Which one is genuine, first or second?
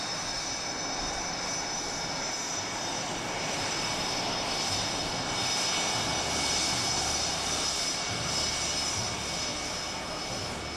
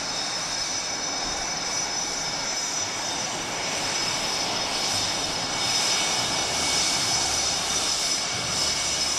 first